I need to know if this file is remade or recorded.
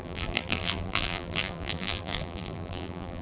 remade